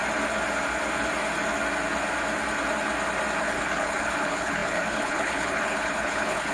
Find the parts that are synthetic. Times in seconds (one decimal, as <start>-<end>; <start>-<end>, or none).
3.4-6.5